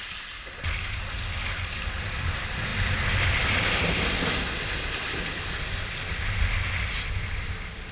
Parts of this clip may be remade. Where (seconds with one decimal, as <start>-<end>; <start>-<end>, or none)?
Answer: none